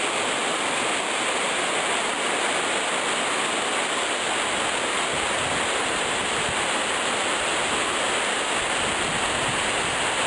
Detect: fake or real real